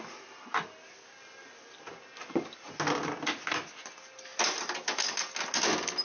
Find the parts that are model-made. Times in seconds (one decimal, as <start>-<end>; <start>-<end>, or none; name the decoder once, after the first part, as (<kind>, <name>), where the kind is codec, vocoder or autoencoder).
4.3-5.1 (vocoder, BigVGAN v2)